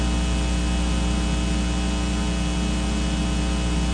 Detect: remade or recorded recorded